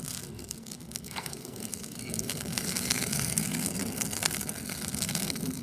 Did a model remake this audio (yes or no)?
yes